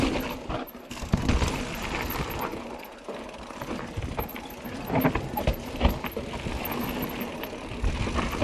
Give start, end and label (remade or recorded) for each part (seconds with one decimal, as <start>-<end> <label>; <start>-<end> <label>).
0.0-0.8 recorded; 0.8-1.3 remade; 1.3-8.4 recorded